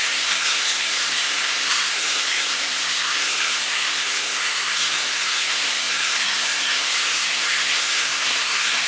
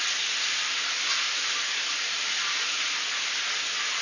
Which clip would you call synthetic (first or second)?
first